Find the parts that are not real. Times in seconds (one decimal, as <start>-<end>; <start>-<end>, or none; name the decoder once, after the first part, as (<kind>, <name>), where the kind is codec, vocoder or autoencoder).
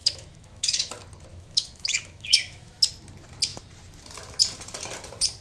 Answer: 0.0-0.9 (autoencoder, DAC-VAE); 1.3-2.7